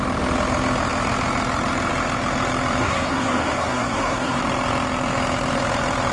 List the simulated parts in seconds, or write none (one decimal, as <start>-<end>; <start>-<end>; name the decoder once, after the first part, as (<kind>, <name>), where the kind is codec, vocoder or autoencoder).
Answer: 2.8-4.4 (codec, SNAC)